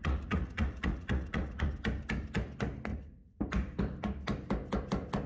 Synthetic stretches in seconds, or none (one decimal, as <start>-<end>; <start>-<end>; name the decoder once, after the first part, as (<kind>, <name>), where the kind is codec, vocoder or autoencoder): 0.0-1.7 (vocoder, Vocos); 2.9-3.4